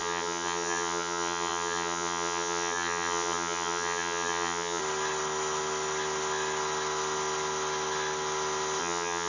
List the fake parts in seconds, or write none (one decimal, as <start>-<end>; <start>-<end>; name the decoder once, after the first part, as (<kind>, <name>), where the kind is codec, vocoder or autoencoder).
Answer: 0.0-4.8 (vocoder, HiFi-GAN); 8.8-9.3